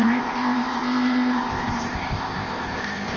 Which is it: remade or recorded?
remade